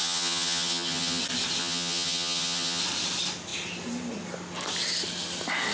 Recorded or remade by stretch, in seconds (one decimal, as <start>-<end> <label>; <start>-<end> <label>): 0.0-1.2 remade; 1.2-1.6 recorded; 1.6-2.8 remade; 2.8-5.7 recorded